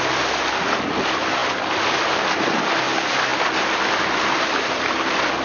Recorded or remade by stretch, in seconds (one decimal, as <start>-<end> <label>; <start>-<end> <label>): 0.0-5.4 recorded